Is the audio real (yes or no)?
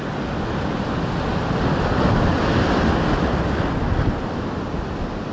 yes